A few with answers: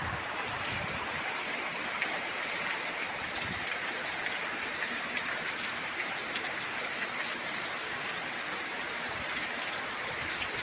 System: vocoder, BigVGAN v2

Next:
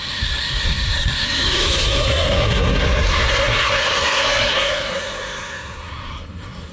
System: codec, SNAC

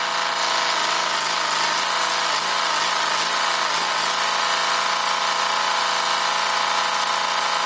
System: none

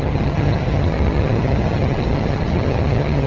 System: vocoder, HiFi-GAN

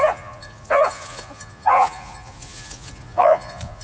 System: vocoder, Vocos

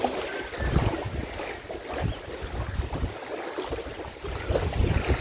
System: none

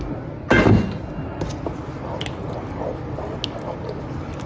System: none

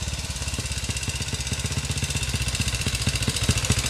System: vocoder, BigVGAN v2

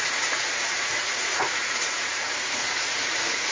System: vocoder, Vocos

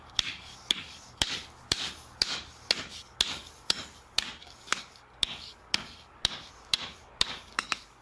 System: codec, DAC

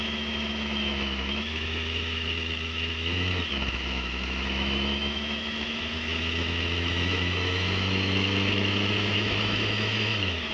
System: autoencoder, DAC-VAE